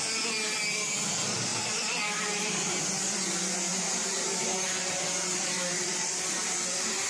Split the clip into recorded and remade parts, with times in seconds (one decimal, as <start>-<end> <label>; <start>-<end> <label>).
0.0-1.5 recorded; 1.5-2.8 remade; 2.8-3.7 recorded; 3.7-7.1 remade